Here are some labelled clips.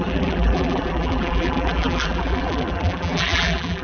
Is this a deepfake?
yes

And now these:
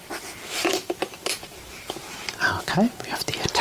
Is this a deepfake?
yes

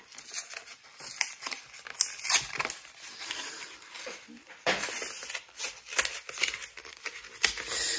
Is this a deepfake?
no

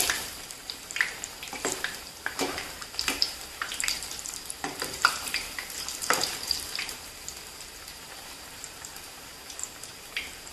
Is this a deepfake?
yes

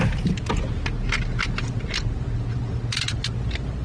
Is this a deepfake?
no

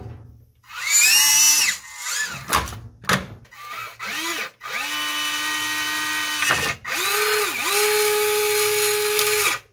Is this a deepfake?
no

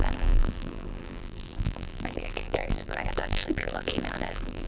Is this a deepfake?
yes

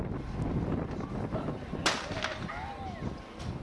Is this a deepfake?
no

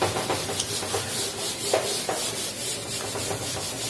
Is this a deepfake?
no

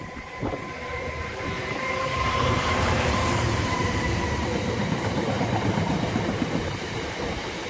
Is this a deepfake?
yes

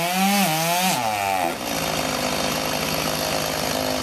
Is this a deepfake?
no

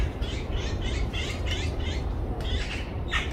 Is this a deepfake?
yes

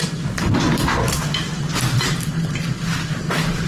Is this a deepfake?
yes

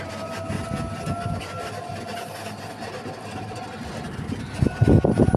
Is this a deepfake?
no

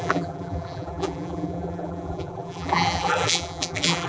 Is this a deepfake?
yes